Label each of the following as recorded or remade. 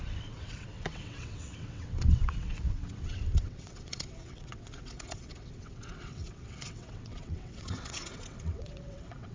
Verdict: remade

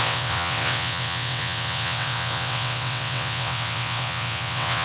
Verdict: remade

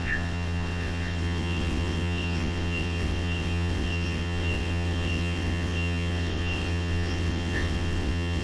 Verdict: remade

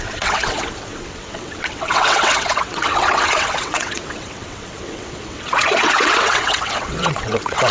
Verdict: remade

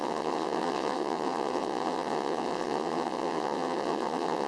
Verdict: remade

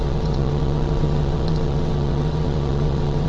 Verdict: remade